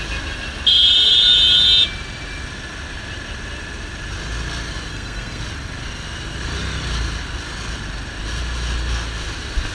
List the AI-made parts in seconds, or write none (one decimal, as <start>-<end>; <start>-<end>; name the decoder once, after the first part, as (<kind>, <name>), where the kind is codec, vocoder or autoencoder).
4.9-5.4 (codec, SNAC)